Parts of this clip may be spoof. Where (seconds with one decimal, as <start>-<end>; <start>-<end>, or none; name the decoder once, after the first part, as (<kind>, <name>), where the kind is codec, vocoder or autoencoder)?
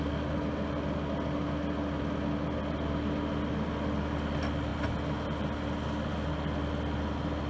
none